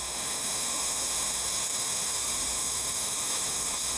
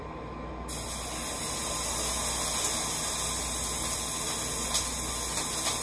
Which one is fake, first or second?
first